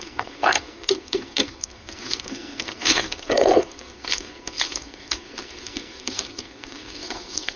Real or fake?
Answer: fake